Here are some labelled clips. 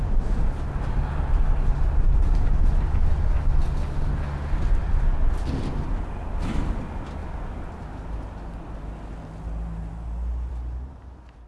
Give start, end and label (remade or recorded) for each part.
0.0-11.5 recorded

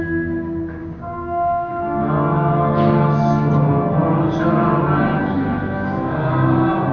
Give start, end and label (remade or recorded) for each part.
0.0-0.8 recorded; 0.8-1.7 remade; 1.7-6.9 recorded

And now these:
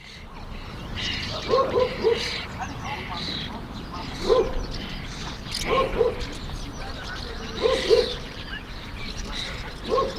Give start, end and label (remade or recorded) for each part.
0.0-2.5 remade; 2.5-10.2 recorded

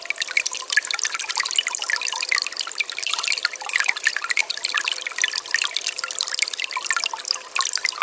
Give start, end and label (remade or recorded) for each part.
0.0-3.4 recorded; 3.4-4.4 remade; 4.4-8.0 recorded